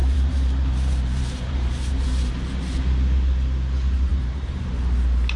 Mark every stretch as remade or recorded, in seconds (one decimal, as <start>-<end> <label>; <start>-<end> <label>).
0.0-2.3 remade; 2.3-4.1 recorded; 4.1-4.6 remade; 4.6-5.4 recorded